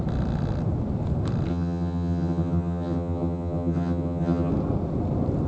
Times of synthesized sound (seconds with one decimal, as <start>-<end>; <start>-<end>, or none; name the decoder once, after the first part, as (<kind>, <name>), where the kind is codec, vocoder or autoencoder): 1.5-4.5 (vocoder, HiFi-GAN)